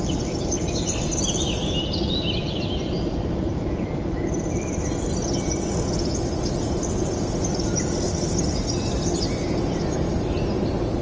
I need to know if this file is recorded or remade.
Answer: recorded